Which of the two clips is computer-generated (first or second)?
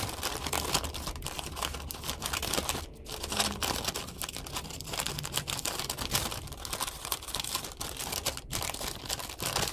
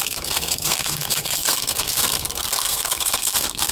second